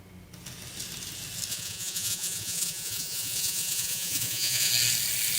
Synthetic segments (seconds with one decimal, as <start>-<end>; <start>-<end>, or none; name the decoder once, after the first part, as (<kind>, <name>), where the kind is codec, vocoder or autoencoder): 1.5-4.7 (vocoder, Vocos)